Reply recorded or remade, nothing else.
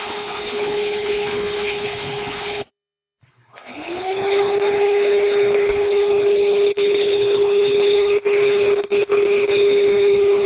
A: remade